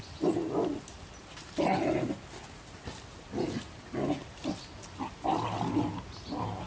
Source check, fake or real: real